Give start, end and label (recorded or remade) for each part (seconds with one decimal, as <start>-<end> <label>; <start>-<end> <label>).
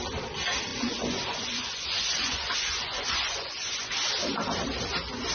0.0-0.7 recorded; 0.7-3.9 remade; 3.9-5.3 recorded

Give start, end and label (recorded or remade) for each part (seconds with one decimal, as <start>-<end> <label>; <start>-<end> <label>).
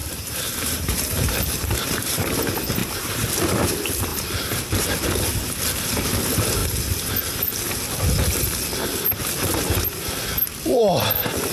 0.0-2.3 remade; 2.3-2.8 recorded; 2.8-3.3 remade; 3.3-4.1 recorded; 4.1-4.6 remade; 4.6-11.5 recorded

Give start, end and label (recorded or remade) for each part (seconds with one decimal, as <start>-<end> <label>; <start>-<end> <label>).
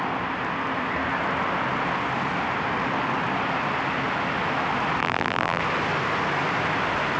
0.0-5.0 recorded; 5.0-5.6 remade; 5.6-7.2 recorded